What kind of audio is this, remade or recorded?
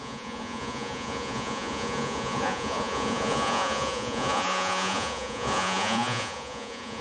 remade